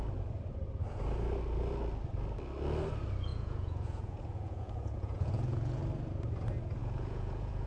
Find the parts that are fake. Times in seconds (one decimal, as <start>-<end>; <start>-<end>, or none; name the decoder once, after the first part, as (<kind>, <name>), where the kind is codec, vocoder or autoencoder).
3.3-5.8 (vocoder, Vocos); 6.8-7.7

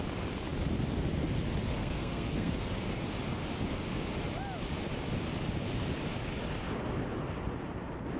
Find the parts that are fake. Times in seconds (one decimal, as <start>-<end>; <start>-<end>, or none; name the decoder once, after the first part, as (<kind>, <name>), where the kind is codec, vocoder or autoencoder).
1.8-2.5 (codec, SNAC)

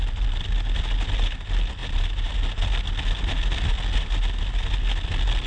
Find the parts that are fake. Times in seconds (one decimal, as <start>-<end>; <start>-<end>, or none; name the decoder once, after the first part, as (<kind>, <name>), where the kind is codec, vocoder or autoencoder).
none

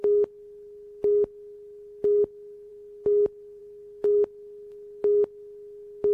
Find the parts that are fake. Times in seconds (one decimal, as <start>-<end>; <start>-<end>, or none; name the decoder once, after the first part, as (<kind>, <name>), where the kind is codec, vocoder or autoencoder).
none

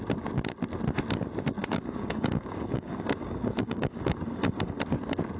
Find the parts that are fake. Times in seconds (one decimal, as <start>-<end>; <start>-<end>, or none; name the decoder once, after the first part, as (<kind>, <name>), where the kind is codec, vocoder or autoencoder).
1.6-4.8 (codec, DAC)